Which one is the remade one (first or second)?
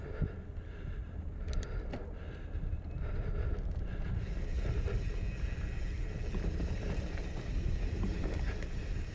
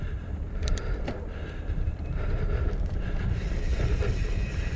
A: second